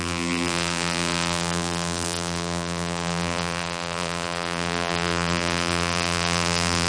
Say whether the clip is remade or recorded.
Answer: remade